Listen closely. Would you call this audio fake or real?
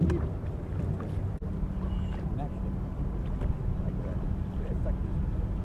real